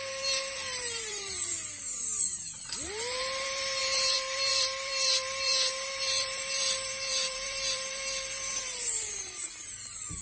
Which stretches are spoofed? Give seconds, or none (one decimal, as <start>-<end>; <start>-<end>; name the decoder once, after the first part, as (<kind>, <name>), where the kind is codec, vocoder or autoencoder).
0.0-1.5 (vocoder, BigVGAN v2); 2.2-10.2